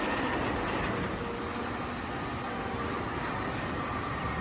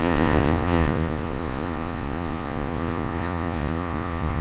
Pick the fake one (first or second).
second